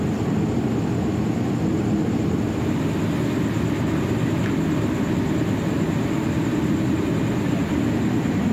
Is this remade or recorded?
recorded